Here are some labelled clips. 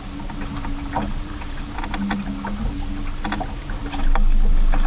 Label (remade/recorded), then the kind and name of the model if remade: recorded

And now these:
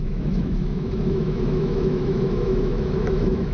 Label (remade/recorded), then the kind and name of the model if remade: remade, autoencoder, DAC-VAE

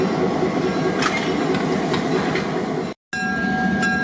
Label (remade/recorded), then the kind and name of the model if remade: recorded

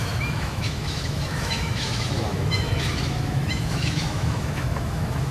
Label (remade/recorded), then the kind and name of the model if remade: remade, autoencoder, DAC-VAE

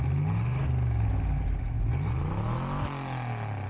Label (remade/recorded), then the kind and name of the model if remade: recorded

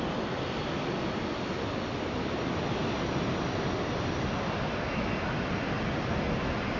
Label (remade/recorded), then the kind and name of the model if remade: recorded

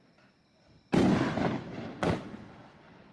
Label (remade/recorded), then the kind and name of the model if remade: recorded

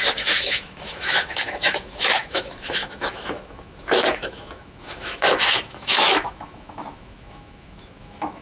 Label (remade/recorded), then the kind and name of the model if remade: remade, autoencoder, DAC-VAE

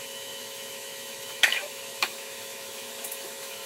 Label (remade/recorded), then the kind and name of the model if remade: remade, autoencoder, DAC-VAE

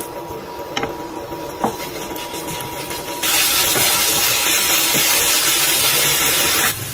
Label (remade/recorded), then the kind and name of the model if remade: recorded